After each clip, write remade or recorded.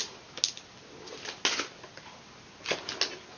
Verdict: recorded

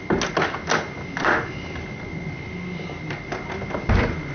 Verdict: recorded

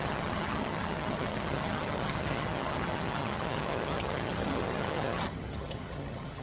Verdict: remade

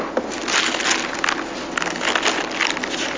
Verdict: recorded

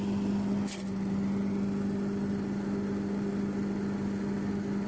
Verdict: recorded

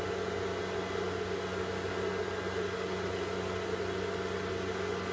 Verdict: recorded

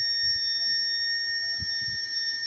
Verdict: recorded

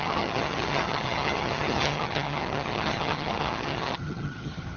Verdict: remade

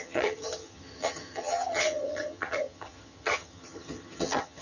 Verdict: remade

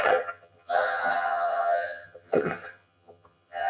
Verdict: remade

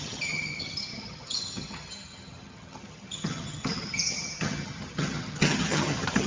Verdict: remade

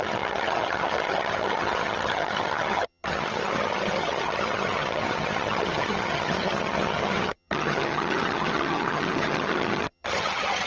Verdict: remade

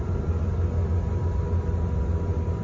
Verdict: recorded